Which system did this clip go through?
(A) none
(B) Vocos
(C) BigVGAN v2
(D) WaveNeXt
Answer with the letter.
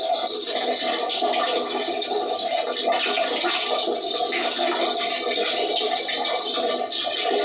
A